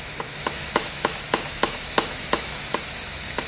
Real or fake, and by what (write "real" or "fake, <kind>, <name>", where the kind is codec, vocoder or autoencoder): fake, autoencoder, DAC-VAE